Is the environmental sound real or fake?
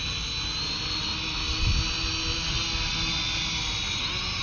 real